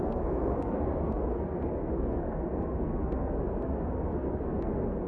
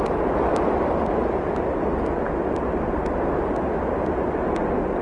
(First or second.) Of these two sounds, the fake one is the first